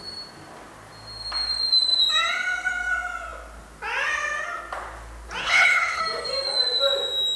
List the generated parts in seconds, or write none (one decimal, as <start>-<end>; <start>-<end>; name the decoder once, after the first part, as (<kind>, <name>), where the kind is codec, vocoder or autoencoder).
5.4-6.0 (codec, HILCodec)